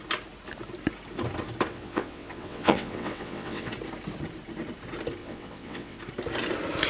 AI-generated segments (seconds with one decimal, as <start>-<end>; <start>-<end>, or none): 1.7-3.7; 5.2-6.0